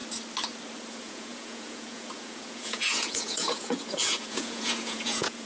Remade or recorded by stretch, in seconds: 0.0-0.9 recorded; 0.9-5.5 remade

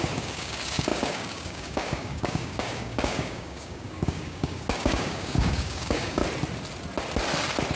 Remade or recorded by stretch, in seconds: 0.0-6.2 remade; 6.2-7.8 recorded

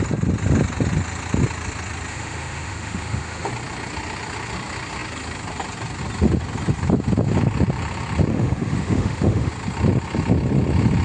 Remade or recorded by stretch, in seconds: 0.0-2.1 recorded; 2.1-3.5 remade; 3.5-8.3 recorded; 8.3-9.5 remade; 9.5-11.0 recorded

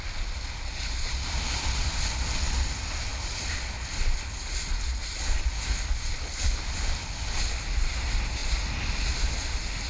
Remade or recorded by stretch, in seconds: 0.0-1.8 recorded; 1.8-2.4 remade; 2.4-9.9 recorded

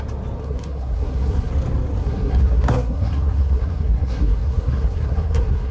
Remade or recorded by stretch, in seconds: 0.0-0.4 recorded; 0.4-1.5 remade; 1.5-2.0 recorded; 2.0-5.7 remade

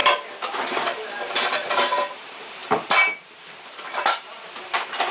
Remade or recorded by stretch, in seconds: 0.0-0.6 recorded; 0.6-5.1 remade